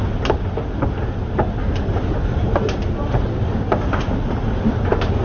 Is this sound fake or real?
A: real